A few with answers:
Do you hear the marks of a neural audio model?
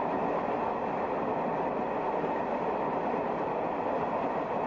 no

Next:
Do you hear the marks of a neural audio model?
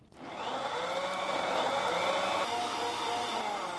no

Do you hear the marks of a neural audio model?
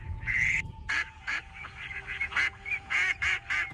yes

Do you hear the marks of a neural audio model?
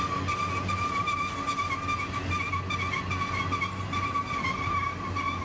no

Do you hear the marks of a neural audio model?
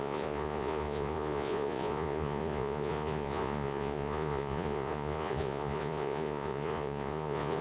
yes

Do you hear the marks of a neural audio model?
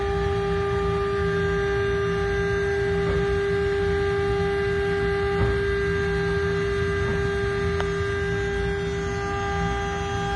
no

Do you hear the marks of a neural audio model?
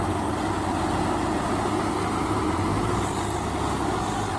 no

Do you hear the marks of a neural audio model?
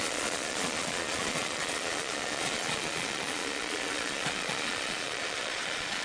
yes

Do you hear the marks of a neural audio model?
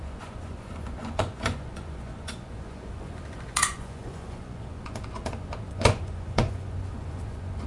yes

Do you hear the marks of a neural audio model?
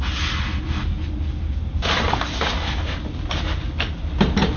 no